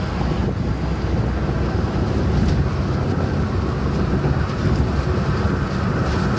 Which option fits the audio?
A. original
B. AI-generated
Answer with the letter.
A